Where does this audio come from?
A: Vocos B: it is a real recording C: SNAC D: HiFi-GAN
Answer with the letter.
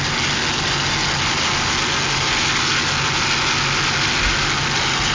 B